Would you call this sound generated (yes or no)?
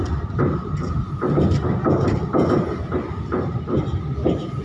no